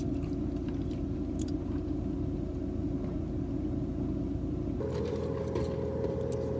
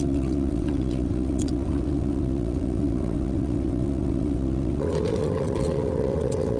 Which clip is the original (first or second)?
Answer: first